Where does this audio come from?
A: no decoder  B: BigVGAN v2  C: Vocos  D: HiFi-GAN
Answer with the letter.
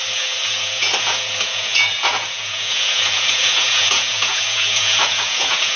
C